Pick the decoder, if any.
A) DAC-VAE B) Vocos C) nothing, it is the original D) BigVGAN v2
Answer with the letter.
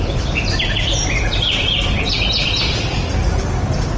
C